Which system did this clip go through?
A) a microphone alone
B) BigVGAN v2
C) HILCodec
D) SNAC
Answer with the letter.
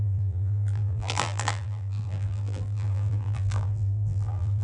B